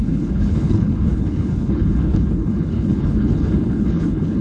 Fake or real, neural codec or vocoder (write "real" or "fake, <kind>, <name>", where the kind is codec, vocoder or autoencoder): fake, codec, HILCodec